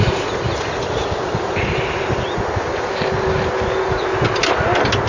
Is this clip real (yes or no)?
yes